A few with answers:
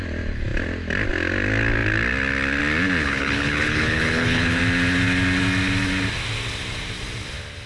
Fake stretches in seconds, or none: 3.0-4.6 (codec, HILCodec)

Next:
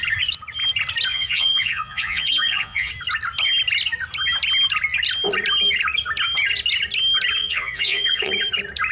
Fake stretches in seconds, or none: 1.1-2.9 (vocoder, Vocos); 7.4-8.3

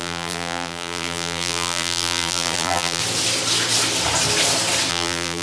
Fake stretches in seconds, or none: 0.0-3.0 (vocoder, BigVGAN v2); 4.9-5.4

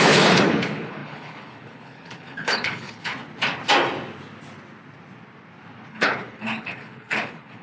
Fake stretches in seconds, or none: 0.0-3.1 (codec, HILCodec); 5.9-7.6